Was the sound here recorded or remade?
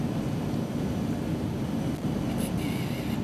recorded